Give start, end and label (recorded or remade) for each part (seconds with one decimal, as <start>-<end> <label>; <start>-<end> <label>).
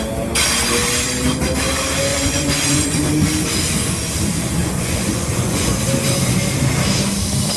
0.0-2.1 recorded; 2.1-3.0 remade; 3.0-4.6 recorded; 4.6-5.8 remade; 5.8-7.6 recorded